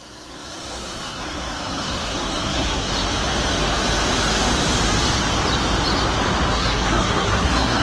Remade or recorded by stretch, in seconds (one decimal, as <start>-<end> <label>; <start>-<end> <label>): 0.0-2.9 remade; 2.9-6.5 recorded; 6.5-7.8 remade